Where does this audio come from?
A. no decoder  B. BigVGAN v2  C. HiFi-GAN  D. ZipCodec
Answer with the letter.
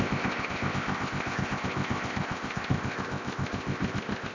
D